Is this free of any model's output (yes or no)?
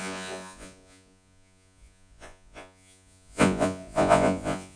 no